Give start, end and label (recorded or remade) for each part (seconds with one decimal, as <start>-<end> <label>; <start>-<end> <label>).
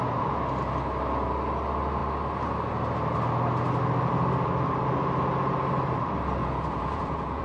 0.0-6.4 recorded; 6.4-7.4 remade